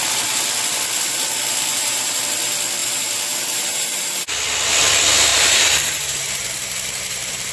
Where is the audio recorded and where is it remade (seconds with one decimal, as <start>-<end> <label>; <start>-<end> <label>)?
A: 0.0-1.7 recorded; 1.7-2.2 remade; 2.2-2.8 recorded; 2.8-4.2 remade; 4.2-5.3 recorded; 5.3-7.5 remade